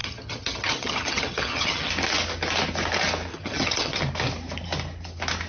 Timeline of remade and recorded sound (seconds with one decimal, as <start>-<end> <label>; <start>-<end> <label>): 0.0-1.9 remade; 1.9-3.3 recorded; 3.3-4.0 remade; 4.0-5.5 recorded